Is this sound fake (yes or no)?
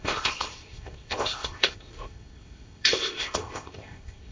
yes